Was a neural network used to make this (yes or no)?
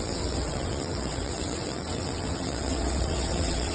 yes